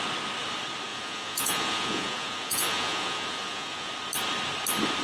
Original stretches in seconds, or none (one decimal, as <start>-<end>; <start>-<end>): 0.0-0.9; 3.9-5.0